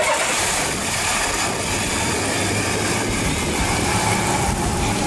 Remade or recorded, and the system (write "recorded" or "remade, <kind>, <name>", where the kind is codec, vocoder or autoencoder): remade, vocoder, BigVGAN v2